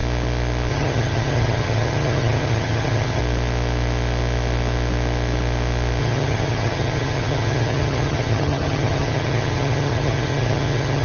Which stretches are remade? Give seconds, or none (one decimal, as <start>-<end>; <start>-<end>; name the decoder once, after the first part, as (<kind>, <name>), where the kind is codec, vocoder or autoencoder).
0.7-3.2 (vocoder, HiFi-GAN); 6.0-11.0